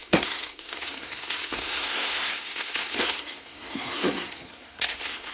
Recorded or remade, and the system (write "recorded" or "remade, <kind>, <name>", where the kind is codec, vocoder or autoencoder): remade, codec, SNAC